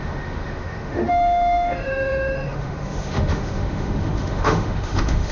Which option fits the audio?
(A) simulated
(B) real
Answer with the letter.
A